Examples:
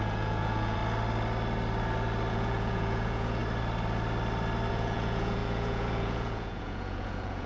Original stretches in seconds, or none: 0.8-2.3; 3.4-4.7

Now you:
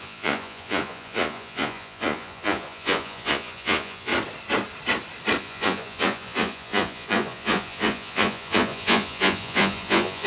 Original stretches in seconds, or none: 4.1-5.4

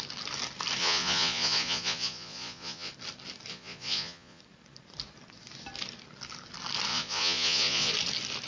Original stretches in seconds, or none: 0.0-0.8; 2.9-3.5; 4.4-6.9; 7.9-8.5

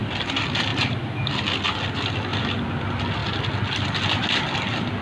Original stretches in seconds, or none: 0.0-0.7; 1.3-5.0

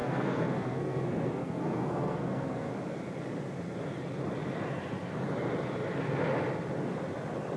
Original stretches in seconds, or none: 2.7-7.6